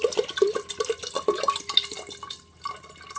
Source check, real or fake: real